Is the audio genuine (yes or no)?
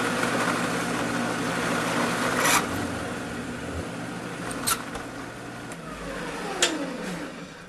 yes